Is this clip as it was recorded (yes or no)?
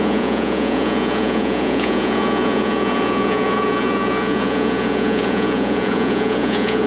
no